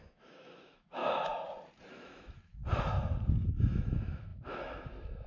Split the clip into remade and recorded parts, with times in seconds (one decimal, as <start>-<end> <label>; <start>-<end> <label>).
0.0-1.0 remade; 1.0-1.9 recorded; 1.9-2.6 remade; 2.6-3.3 recorded; 3.3-5.3 remade